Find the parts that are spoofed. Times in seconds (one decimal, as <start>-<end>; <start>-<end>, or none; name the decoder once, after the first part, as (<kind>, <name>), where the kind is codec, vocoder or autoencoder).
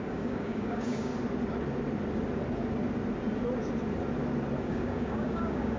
0.0-1.1 (codec, DAC); 4.6-5.8